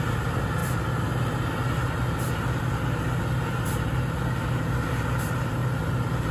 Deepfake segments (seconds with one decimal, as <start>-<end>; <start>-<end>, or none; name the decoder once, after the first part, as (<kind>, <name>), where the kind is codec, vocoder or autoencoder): none